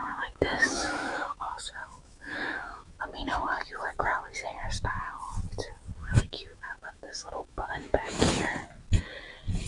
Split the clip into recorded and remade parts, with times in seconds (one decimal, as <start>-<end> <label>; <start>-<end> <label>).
0.0-3.0 remade; 3.0-6.0 recorded; 6.0-8.2 remade; 8.2-9.7 recorded